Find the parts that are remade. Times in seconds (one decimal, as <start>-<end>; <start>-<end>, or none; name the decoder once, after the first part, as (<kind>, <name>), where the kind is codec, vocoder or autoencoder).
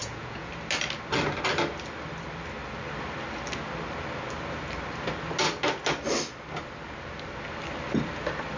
0.0-0.5 (vocoder, Vocos)